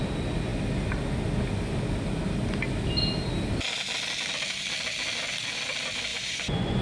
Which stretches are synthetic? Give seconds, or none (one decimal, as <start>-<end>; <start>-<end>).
6.1-6.8